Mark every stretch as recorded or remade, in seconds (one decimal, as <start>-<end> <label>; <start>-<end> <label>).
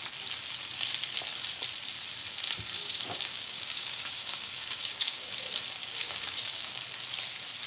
0.0-2.8 recorded; 2.8-5.3 remade; 5.3-5.8 recorded; 5.8-6.8 remade; 6.8-7.7 recorded